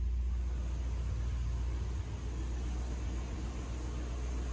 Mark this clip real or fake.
real